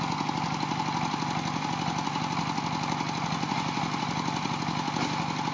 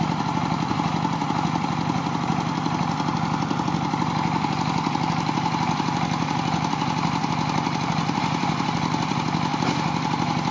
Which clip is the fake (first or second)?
second